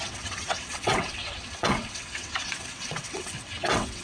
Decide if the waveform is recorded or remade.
remade